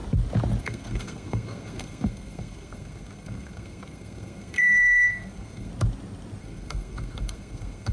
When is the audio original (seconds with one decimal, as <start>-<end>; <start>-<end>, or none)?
0.0-0.6; 5.7-6.4

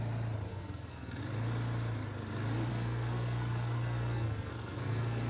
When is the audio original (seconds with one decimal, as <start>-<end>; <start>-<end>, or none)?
0.0-0.5; 1.2-2.7

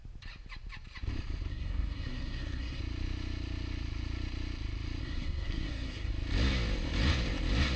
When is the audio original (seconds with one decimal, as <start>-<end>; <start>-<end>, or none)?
0.0-1.5; 2.8-5.0; 6.1-7.8

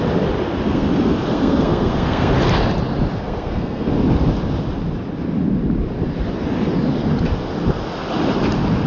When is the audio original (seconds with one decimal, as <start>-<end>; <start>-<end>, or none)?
0.0-0.7; 2.3-3.1; 3.9-8.9

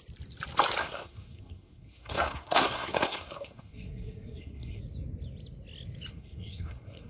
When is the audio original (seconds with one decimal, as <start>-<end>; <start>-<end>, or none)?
0.0-0.8; 4.8-6.1